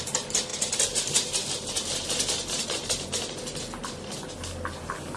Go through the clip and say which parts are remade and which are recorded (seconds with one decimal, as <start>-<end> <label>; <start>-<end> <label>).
0.0-0.5 remade; 0.5-3.6 recorded; 3.6-4.4 remade; 4.4-5.2 recorded